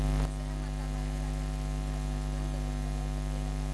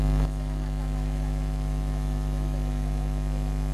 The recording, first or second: first